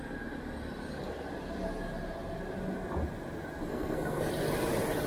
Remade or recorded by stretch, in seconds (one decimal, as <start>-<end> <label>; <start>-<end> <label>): 0.0-3.7 recorded; 3.7-4.3 remade; 4.3-5.1 recorded